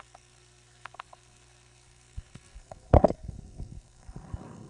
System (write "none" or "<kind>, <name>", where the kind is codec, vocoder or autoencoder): codec, SNAC